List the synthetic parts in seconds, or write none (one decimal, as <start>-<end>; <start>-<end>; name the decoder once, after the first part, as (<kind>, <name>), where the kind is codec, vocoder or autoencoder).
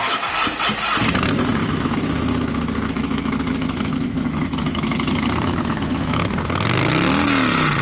1.6-6.3 (autoencoder, DAC-VAE)